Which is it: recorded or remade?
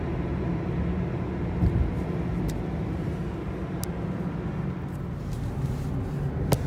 recorded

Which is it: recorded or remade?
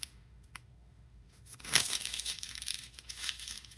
remade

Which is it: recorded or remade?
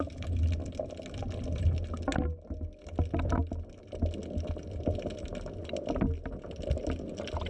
recorded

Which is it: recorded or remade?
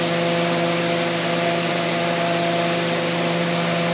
remade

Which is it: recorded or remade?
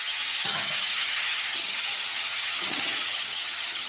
remade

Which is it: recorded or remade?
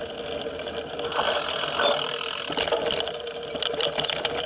recorded